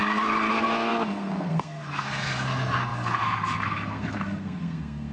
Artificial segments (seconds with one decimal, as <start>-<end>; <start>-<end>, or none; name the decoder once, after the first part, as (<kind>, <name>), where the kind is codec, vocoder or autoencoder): 0.5-5.1 (codec, SNAC)